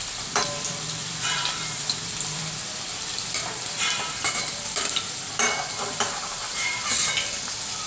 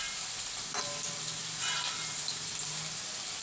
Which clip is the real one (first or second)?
second